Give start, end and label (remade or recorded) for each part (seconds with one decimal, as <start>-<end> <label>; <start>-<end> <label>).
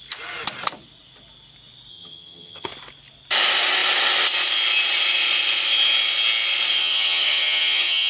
0.0-1.9 recorded; 1.9-2.7 remade; 2.7-6.8 recorded; 6.8-8.1 remade